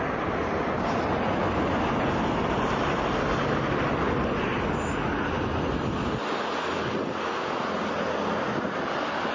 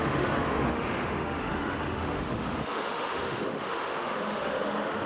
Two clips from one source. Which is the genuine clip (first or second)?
first